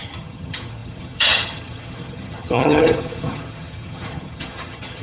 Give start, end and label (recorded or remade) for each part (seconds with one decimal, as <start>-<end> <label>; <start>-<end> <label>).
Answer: 0.0-5.0 remade